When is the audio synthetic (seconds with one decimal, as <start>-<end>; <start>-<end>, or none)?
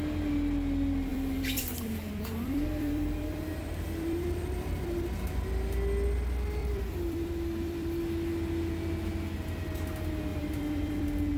1.1-5.1; 6.6-8.0; 10.3-11.4